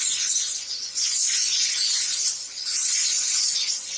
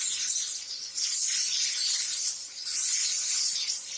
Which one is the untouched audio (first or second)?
second